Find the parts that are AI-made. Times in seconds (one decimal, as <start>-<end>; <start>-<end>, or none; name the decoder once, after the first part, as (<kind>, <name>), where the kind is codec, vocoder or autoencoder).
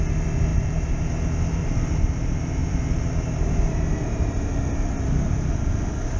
0.5-1.0 (vocoder, BigVGAN v2); 1.6-2.1; 2.6-4.4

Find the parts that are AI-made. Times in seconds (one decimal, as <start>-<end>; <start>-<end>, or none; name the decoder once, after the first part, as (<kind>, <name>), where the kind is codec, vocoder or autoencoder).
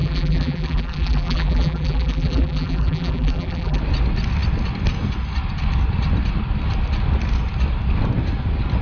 0.0-3.8 (vocoder, BigVGAN v2)